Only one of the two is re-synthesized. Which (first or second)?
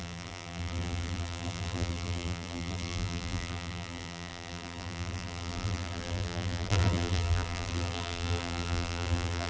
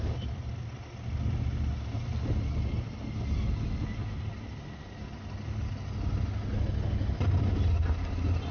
first